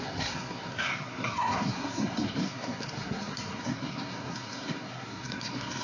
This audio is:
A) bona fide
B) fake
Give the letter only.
B